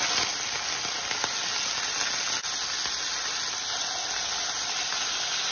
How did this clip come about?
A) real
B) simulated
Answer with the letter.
A